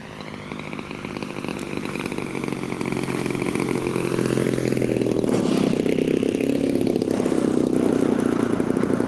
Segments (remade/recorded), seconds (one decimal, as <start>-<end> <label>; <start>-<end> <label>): 0.0-9.1 recorded